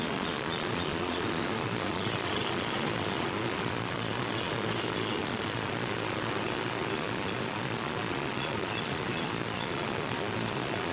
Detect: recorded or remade remade